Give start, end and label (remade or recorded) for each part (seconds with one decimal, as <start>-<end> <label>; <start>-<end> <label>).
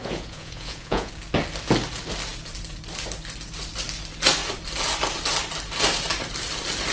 0.0-1.1 remade; 1.1-6.9 recorded